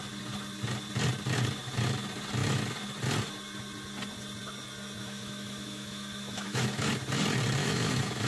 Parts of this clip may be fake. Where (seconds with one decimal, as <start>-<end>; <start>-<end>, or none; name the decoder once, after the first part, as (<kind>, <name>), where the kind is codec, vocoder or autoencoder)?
5.0-6.9 (autoencoder, DAC-VAE); 7.6-8.3